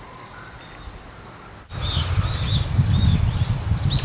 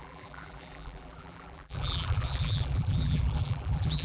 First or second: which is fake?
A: second